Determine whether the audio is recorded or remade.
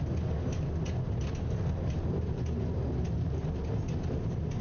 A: recorded